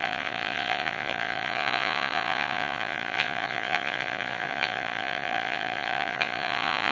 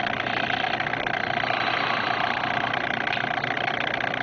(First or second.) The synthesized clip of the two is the first